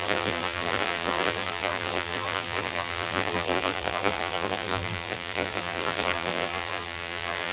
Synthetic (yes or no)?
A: yes